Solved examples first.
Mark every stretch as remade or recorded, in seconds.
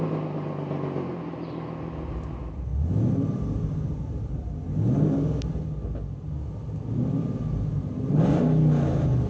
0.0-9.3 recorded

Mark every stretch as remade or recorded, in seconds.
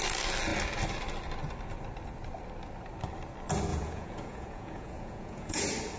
0.0-3.7 recorded; 3.7-5.6 remade; 5.6-6.0 recorded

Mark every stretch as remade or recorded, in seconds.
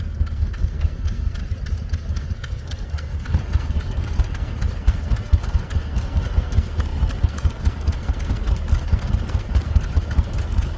0.0-1.4 remade; 1.4-2.1 recorded; 2.1-10.8 remade